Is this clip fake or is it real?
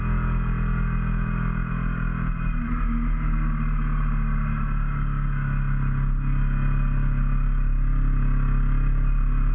real